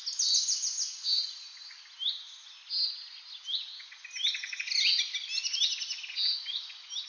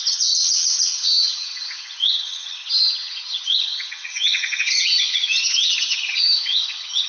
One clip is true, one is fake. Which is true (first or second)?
first